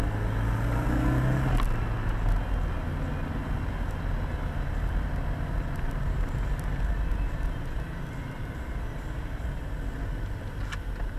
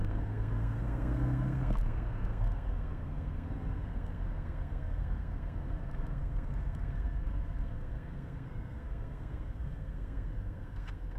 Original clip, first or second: first